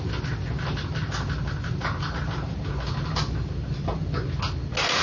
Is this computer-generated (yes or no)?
no